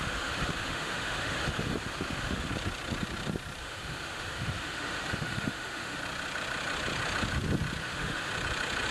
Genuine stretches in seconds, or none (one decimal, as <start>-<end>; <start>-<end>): 2.5-3.6; 6.0-7.8; 8.3-8.9